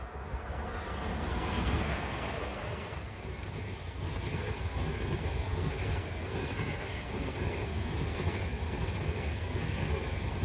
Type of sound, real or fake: fake